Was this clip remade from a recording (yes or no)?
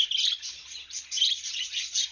no